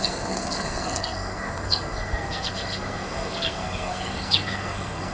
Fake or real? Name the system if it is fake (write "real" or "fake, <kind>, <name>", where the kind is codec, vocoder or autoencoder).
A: fake, codec, SNAC